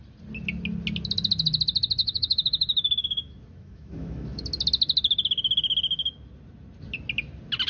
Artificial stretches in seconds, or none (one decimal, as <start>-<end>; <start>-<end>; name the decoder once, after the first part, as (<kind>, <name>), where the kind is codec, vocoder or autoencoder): 2.0-4.4 (autoencoder, DAC-VAE)